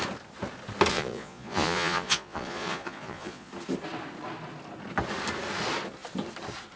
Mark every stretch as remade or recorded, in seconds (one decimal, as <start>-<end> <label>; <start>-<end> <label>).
0.0-0.9 recorded; 0.9-3.5 remade; 3.5-6.8 recorded